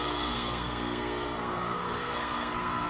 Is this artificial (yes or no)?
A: yes